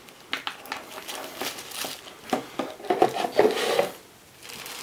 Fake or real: real